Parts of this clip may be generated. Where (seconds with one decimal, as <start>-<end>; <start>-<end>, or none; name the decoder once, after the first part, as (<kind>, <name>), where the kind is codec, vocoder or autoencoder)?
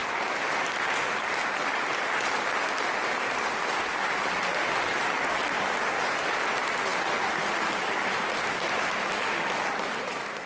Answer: none